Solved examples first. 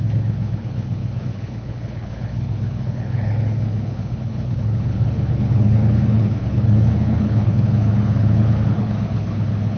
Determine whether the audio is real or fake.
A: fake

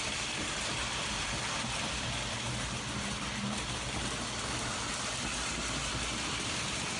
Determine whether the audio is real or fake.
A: real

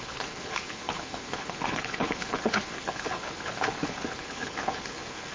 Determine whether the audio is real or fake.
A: fake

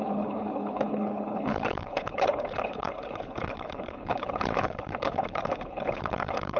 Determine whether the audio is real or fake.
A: fake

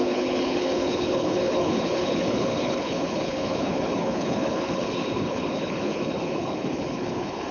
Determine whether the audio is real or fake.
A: fake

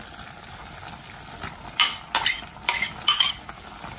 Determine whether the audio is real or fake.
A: real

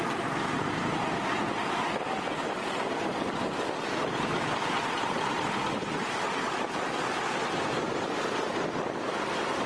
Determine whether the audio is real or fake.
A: real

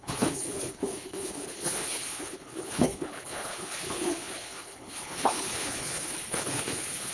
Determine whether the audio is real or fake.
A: fake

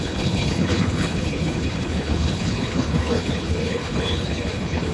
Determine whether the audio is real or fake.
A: fake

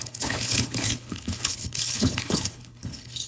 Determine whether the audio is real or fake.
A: fake